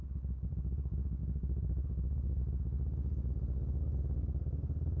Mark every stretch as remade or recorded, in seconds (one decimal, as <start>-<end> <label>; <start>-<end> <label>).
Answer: 0.0-1.2 recorded; 1.2-2.4 remade; 2.4-5.0 recorded